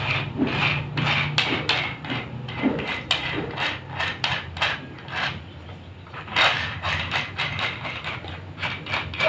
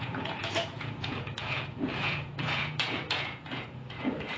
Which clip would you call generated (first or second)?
second